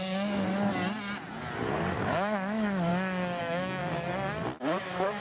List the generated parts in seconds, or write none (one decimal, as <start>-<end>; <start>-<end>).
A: 0.0-0.7; 2.0-2.9; 3.4-3.8; 4.8-5.2